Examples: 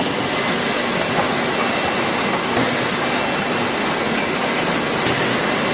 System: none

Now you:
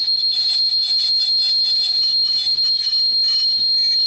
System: none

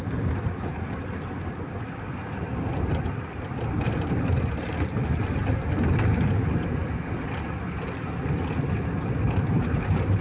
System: none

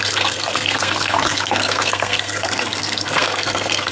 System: codec, SNAC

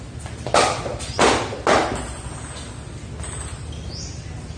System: none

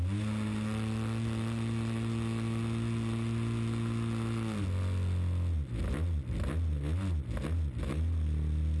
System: none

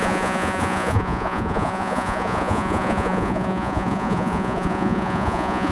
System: vocoder, Vocos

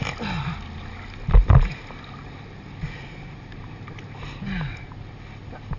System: none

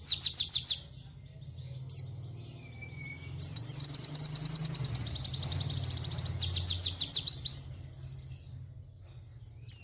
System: none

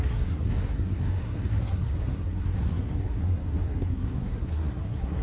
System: codec, SNAC